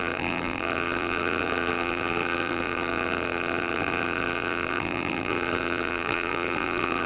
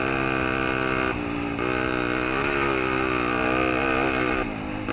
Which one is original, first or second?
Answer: second